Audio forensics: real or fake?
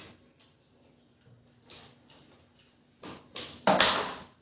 real